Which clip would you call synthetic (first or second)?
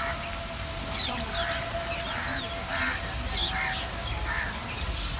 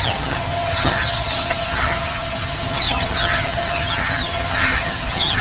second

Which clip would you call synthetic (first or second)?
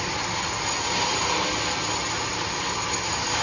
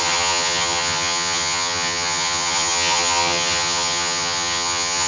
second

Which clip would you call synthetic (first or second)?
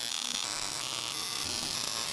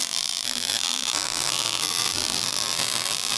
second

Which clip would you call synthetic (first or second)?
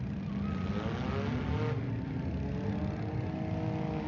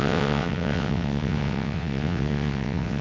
second